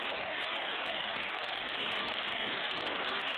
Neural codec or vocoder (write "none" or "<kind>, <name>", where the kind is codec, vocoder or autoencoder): codec, DAC